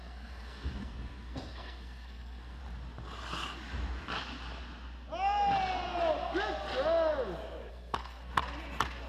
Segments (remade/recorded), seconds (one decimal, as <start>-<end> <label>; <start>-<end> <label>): 0.0-2.6 remade; 2.6-7.7 recorded; 7.7-8.3 remade; 8.3-9.1 recorded